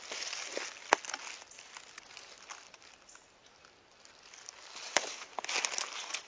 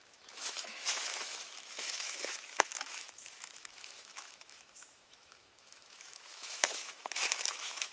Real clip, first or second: first